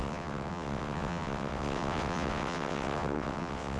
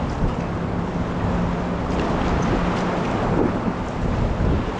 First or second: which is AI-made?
first